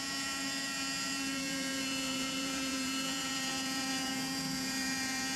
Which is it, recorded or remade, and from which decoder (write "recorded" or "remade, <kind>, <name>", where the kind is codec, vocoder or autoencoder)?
remade, vocoder, Vocos